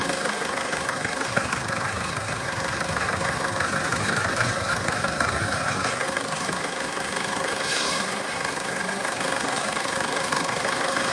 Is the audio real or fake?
fake